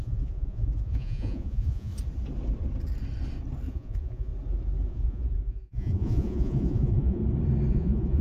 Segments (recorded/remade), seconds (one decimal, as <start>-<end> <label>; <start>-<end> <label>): 0.0-1.9 remade; 1.9-3.7 recorded; 3.7-4.3 remade; 4.3-4.9 recorded; 4.9-7.2 remade; 7.2-7.7 recorded; 7.7-8.2 remade